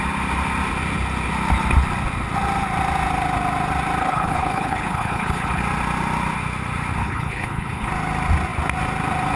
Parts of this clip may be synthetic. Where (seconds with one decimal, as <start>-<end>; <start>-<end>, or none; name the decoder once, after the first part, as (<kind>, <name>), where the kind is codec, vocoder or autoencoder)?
4.0-5.6 (codec, HILCodec); 7.0-7.9